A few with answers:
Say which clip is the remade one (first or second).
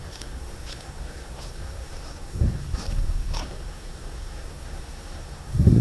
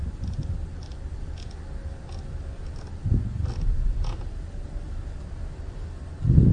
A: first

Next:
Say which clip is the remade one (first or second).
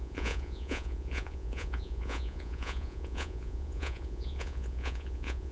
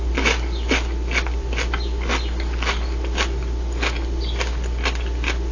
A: first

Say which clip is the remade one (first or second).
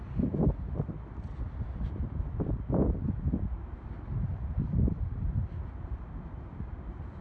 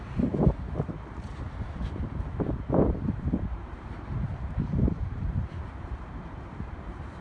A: second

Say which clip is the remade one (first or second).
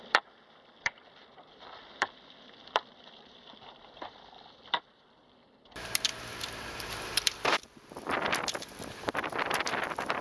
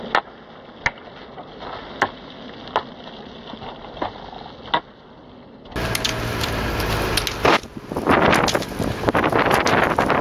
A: first